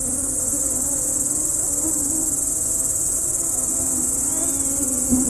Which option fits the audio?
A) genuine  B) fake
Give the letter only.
A